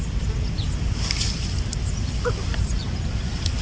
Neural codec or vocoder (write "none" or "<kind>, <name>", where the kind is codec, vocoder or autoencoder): none